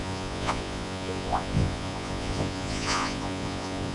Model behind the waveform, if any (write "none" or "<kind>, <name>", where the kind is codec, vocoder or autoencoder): vocoder, Vocos